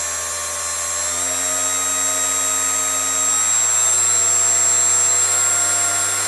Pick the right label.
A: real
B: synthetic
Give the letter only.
A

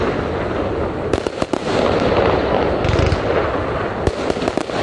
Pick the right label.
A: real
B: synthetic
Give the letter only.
A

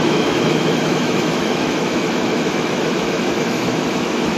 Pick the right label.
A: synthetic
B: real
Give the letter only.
A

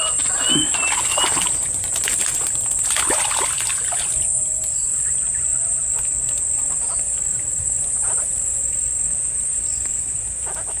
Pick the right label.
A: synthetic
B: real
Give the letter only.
B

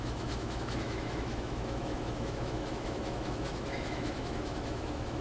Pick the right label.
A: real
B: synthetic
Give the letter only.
B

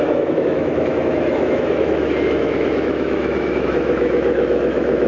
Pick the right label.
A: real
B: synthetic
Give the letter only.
B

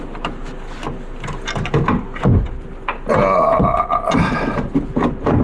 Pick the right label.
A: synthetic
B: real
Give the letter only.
B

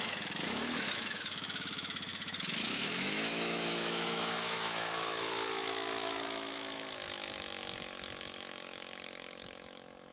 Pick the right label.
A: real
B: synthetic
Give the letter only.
B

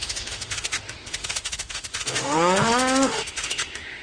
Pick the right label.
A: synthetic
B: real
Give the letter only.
A